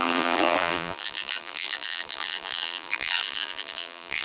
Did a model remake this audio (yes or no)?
yes